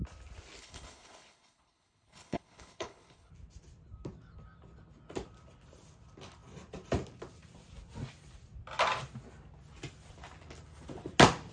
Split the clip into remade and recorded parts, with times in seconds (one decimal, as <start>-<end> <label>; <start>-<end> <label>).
0.0-0.6 recorded; 0.6-3.3 remade; 3.3-11.5 recorded